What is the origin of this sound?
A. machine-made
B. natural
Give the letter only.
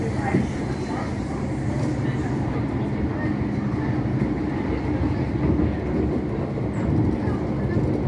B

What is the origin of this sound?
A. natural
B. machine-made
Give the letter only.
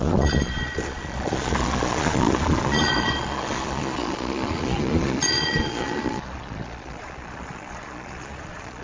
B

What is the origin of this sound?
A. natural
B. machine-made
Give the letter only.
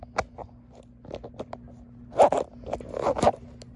A